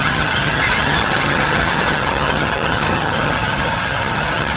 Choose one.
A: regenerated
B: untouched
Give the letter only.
A